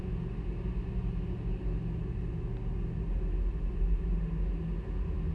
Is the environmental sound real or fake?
real